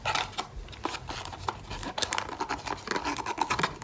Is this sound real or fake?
real